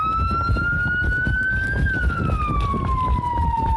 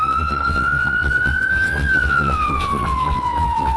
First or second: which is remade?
second